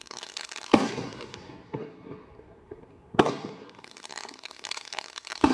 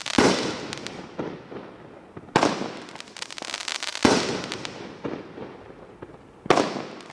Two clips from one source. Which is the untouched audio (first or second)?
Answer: second